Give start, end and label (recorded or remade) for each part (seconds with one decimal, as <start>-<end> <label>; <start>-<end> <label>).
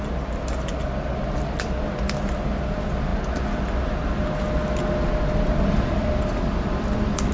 0.0-7.3 recorded